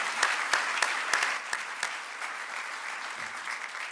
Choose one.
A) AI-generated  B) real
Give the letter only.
B